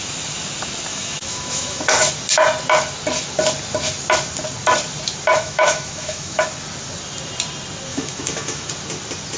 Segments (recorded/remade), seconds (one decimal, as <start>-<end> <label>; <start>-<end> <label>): 0.0-0.9 recorded; 0.9-2.1 remade; 2.1-5.3 recorded; 5.3-6.5 remade; 6.5-7.9 recorded; 7.9-8.7 remade; 8.7-9.4 recorded